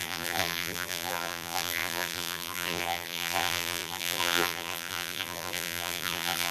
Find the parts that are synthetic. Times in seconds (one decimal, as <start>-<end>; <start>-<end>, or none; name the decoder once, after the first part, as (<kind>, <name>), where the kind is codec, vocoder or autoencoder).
0.0-6.5 (vocoder, BigVGAN v2)